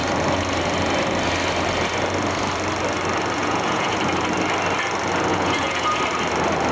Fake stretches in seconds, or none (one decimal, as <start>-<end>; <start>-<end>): 3.4-4.0; 5.3-6.0